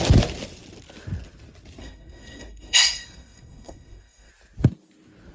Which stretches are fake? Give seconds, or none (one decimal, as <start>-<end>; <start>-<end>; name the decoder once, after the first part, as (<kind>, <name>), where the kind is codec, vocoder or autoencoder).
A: 1.8-4.3 (codec, SNAC)